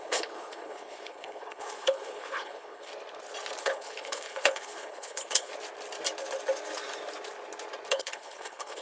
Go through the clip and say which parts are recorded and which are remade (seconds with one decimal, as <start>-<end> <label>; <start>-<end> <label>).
0.0-2.9 remade; 2.9-3.6 recorded; 3.6-5.5 remade; 5.5-7.9 recorded; 7.9-8.8 remade